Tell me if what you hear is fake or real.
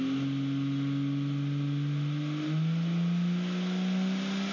real